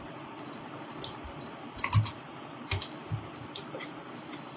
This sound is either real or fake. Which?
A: real